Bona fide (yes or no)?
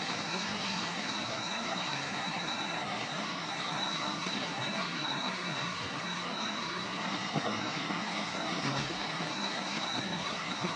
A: no